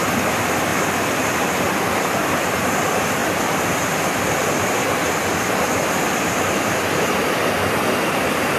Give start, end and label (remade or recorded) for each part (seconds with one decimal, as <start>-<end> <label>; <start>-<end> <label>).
0.0-8.6 recorded